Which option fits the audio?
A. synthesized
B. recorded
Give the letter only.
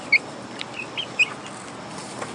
B